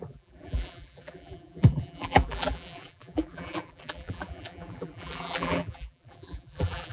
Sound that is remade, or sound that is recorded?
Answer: remade